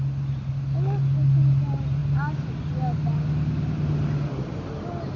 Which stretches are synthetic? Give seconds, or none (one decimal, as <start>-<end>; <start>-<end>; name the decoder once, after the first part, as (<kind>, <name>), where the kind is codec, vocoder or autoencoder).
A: none